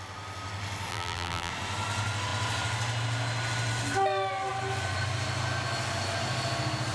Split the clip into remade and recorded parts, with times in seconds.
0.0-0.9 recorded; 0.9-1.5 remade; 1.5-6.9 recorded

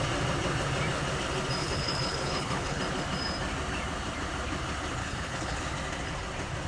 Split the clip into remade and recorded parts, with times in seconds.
0.0-1.6 recorded; 1.6-2.8 remade; 2.8-5.0 recorded; 5.0-5.6 remade; 5.6-6.7 recorded

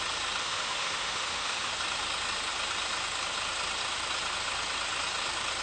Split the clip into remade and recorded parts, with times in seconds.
0.0-0.4 recorded; 0.4-1.7 remade; 1.7-5.6 recorded

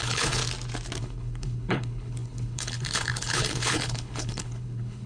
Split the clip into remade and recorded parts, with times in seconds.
0.0-0.4 remade; 0.4-1.0 recorded; 1.0-5.1 remade

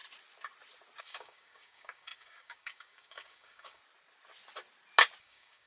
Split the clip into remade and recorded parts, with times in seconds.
0.0-1.0 recorded; 1.0-3.8 remade; 3.8-5.2 recorded; 5.2-5.7 remade

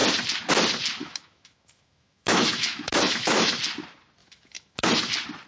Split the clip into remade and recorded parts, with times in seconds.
0.0-1.0 recorded; 1.0-3.6 remade; 3.6-4.2 recorded; 4.2-4.9 remade; 4.9-5.5 recorded